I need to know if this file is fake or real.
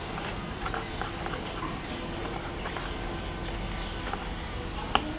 real